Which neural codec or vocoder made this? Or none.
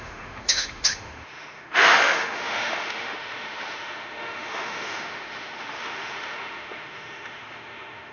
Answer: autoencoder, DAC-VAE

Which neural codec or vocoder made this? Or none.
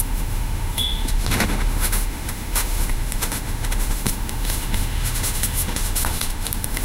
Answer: autoencoder, DAC-VAE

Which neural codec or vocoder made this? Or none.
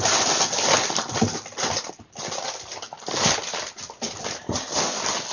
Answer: none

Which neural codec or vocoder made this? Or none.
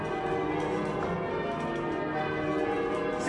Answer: none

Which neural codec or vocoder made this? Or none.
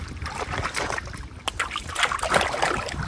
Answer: none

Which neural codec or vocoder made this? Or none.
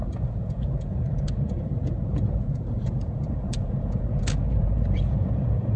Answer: vocoder, Vocos